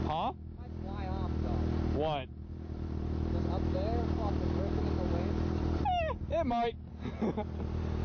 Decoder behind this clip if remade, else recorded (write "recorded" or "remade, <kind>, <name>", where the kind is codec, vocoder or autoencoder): recorded